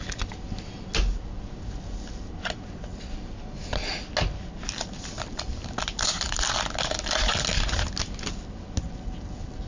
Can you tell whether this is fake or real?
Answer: real